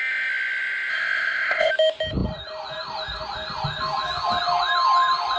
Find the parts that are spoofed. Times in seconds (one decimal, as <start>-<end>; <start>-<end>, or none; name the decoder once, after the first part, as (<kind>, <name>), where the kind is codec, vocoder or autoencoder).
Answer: 0.9-1.7 (codec, ZipCodec)